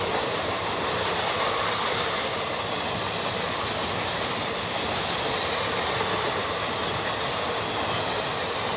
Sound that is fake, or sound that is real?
real